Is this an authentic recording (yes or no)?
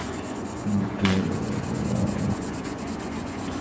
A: no